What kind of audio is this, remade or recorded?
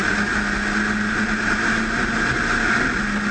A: recorded